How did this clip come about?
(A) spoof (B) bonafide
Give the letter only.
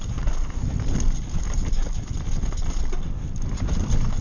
B